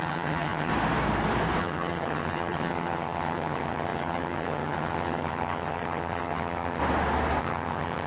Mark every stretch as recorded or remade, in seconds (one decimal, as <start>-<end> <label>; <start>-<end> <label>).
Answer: 0.0-0.7 remade; 0.7-1.6 recorded; 1.6-6.8 remade; 6.8-7.4 recorded; 7.4-8.1 remade